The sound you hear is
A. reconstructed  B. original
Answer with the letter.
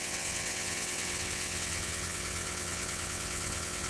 A